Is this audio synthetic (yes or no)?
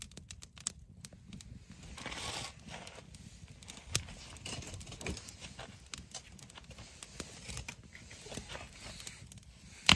no